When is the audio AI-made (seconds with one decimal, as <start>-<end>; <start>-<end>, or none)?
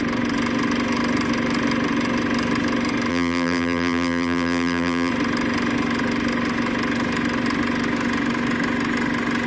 3.1-5.1